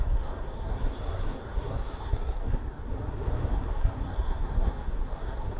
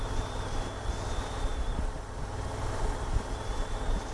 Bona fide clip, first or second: second